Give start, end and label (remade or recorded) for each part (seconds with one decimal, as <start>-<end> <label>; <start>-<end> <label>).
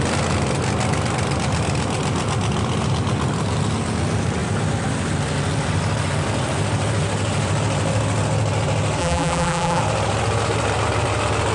0.0-9.0 recorded; 9.0-9.8 remade; 9.8-11.5 recorded